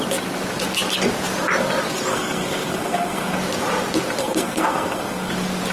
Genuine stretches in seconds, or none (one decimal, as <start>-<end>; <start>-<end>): 0.0-2.1; 3.4-4.2; 5.3-5.7